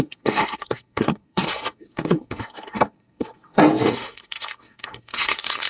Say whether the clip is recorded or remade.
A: remade